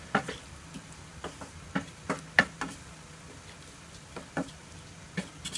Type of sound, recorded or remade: recorded